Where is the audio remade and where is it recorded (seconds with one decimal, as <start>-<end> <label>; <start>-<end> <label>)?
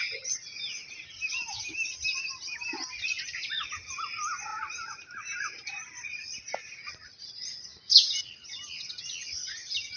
0.0-0.8 recorded; 0.8-2.9 remade; 2.9-4.5 recorded; 4.5-7.3 remade; 7.3-10.0 recorded